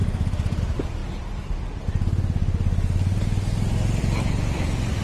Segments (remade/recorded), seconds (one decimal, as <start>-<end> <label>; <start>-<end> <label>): 0.0-0.6 recorded; 0.6-1.0 remade; 1.0-4.0 recorded; 4.0-5.0 remade